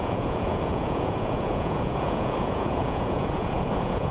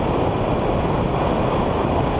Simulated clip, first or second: first